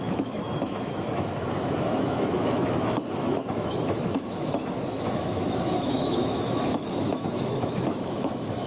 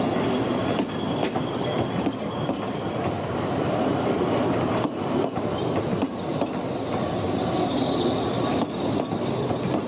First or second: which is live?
second